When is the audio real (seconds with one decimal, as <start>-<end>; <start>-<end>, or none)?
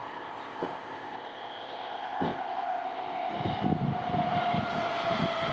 3.3-5.5